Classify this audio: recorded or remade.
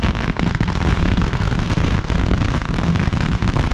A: remade